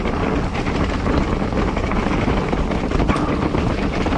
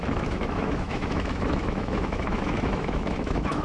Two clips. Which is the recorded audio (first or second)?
first